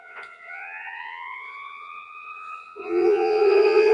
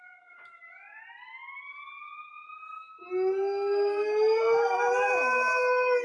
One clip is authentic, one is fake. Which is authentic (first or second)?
second